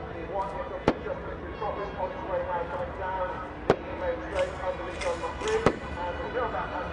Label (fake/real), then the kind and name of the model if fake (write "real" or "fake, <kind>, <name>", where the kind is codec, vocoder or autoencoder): real